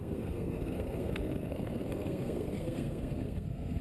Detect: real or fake fake